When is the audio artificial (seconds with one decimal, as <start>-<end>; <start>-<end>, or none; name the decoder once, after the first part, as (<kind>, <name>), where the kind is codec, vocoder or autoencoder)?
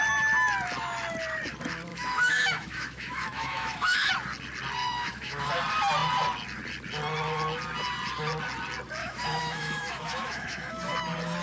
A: 1.9-4.1 (autoencoder, DAC-VAE); 4.8-5.5; 9.0-10.9